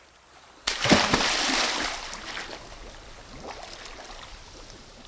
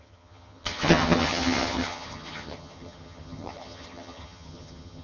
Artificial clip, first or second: second